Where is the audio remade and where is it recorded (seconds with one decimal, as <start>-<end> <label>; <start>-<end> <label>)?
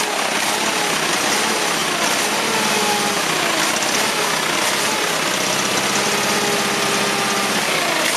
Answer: 0.0-8.2 recorded